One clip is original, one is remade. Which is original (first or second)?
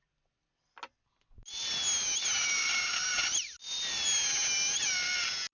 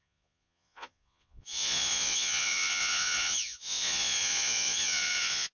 first